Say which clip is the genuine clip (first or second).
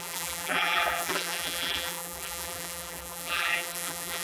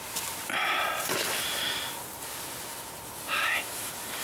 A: second